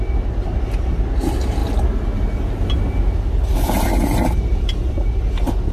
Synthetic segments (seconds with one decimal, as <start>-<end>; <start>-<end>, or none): none